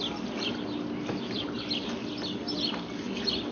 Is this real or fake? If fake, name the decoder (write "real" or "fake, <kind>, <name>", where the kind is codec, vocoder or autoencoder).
real